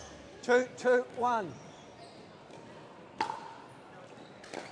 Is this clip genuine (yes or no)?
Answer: yes